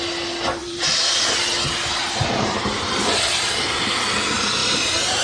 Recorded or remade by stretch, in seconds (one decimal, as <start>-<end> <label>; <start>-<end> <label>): 0.0-0.6 recorded; 0.6-1.1 remade; 1.1-2.0 recorded; 2.0-2.6 remade; 2.6-4.6 recorded; 4.6-5.2 remade